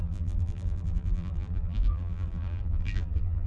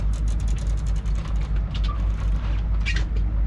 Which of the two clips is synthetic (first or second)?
first